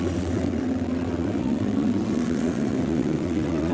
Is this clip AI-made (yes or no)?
yes